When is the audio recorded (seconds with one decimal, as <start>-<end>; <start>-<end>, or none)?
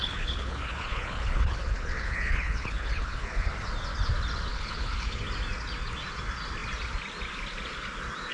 3.5-4.5; 5.2-8.3